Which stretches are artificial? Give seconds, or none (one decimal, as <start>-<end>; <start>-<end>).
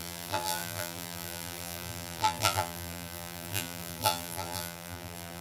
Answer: 0.0-5.4